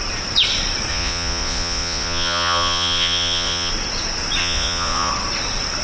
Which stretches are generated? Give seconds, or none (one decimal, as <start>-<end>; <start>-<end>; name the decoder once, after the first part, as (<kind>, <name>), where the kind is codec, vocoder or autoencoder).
0.9-3.7 (vocoder, Vocos); 4.4-5.1